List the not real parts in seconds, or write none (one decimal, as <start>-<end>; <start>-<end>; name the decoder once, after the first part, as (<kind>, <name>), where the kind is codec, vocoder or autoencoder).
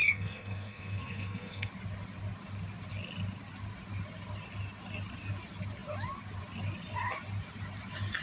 0.0-1.7 (codec, SNAC)